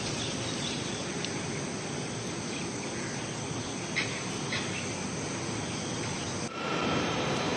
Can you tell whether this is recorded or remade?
recorded